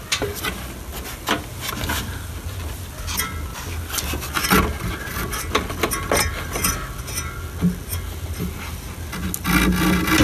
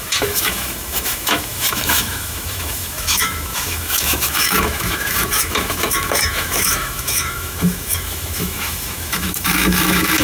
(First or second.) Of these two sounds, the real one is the first